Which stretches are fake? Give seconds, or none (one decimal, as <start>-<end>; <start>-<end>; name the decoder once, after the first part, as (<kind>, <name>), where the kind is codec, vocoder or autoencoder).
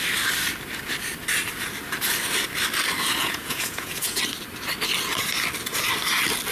3.2-4.2 (vocoder, Vocos)